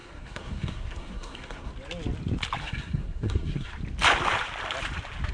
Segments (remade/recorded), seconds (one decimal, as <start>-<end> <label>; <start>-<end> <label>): 0.0-1.7 remade; 1.7-2.6 recorded; 2.6-3.7 remade; 3.7-5.3 recorded